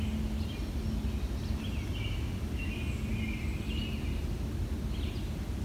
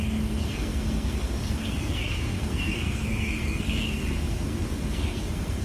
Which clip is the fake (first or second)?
second